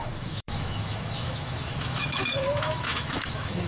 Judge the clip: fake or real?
fake